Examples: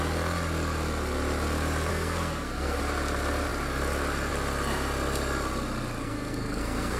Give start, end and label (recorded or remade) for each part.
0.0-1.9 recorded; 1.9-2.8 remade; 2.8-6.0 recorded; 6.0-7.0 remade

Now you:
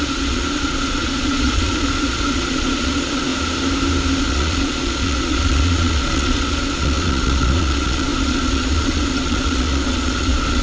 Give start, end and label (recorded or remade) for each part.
0.0-3.3 remade; 3.3-4.2 recorded; 4.2-10.6 remade

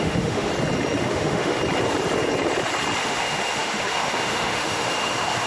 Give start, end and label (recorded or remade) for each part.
0.0-0.5 remade; 0.5-1.0 recorded; 1.0-1.6 remade; 1.6-3.0 recorded; 3.0-5.5 remade

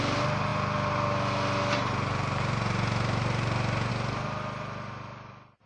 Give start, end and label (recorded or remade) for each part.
0.0-5.7 recorded

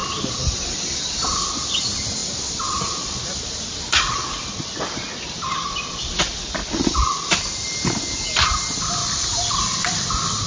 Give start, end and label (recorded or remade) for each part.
0.0-1.4 remade; 1.4-2.2 recorded; 2.2-7.4 remade; 7.4-9.0 recorded; 9.0-9.6 remade; 9.6-10.5 recorded

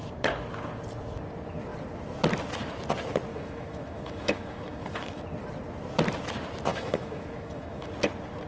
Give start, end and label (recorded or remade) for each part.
0.0-3.3 recorded; 3.3-5.2 remade; 5.2-6.7 recorded; 6.7-7.9 remade; 7.9-8.5 recorded

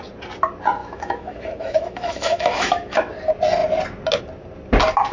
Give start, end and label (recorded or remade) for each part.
0.0-0.8 recorded; 0.8-3.1 remade; 3.1-5.1 recorded